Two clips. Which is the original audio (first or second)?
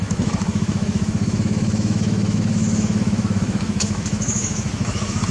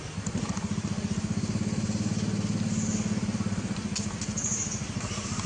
second